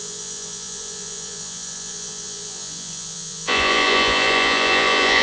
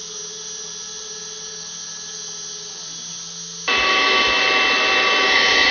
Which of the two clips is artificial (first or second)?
first